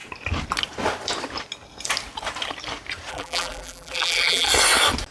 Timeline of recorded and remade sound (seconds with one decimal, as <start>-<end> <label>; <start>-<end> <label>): 0.0-3.1 recorded; 3.1-4.5 remade; 4.5-5.1 recorded